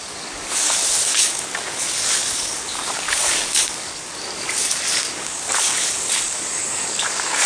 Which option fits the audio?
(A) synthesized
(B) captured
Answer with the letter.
A